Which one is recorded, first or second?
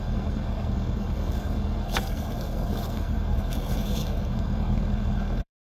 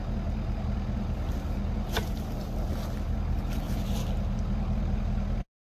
second